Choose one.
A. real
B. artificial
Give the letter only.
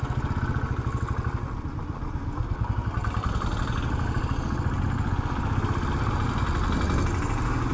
A